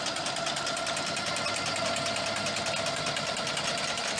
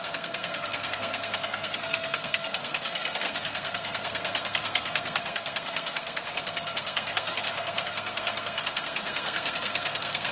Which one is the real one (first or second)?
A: first